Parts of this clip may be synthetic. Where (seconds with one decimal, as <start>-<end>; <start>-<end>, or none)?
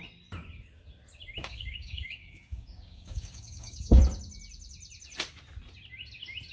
1.4-4.0